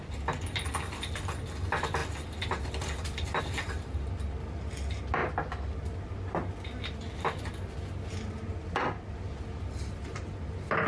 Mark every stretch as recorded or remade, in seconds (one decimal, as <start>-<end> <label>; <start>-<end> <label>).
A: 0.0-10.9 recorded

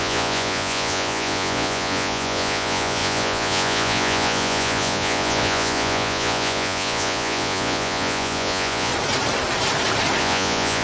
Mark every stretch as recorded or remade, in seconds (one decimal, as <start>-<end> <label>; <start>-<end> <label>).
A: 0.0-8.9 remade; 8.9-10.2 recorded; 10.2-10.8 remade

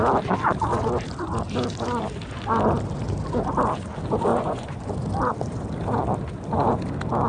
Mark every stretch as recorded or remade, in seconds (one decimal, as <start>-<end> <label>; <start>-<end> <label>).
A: 0.0-4.3 recorded; 4.3-4.9 remade; 4.9-7.3 recorded

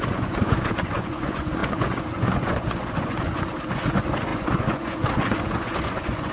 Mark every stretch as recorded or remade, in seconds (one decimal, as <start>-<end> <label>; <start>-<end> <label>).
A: 0.0-6.3 remade

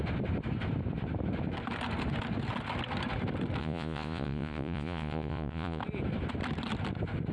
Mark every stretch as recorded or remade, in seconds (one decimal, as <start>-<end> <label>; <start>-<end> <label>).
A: 0.0-3.6 recorded; 3.6-5.8 remade; 5.8-7.3 recorded

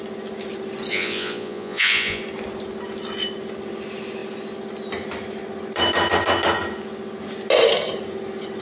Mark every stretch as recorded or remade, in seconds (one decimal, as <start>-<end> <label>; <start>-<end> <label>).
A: 0.0-0.9 recorded; 0.9-2.2 remade; 2.2-8.6 recorded